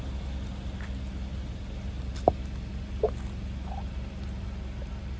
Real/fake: real